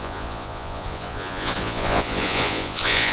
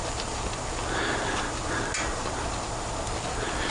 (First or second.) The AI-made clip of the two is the first